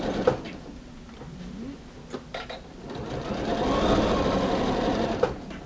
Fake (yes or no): no